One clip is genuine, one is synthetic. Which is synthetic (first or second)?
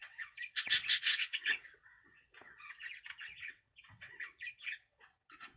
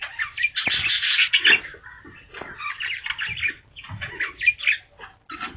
first